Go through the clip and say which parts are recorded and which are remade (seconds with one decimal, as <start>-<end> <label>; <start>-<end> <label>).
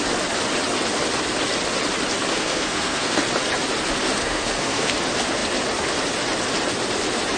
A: 0.0-2.3 recorded; 2.3-3.2 remade; 3.2-4.2 recorded; 4.2-4.9 remade; 4.9-7.4 recorded